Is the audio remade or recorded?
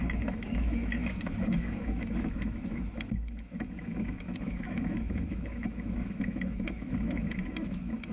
remade